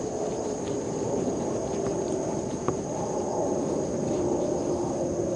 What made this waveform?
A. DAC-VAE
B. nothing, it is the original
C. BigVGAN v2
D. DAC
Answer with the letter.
B